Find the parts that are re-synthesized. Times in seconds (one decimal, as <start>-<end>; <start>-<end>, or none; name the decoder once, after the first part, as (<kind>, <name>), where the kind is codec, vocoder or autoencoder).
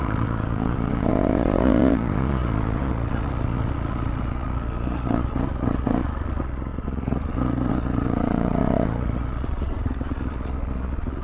0.0-11.2 (vocoder, Vocos)